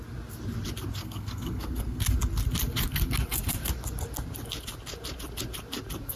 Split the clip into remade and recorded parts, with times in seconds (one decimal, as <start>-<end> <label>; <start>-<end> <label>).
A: 0.0-1.0 recorded; 1.0-2.0 remade; 2.0-6.2 recorded